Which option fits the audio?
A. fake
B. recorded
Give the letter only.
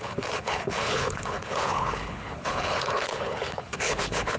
A